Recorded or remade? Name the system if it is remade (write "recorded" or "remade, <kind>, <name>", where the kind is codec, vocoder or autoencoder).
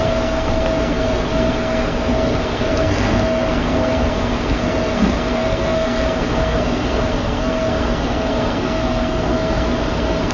remade, codec, SNAC